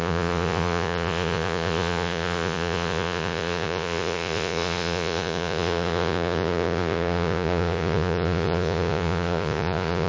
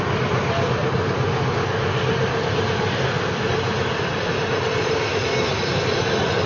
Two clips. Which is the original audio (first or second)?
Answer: second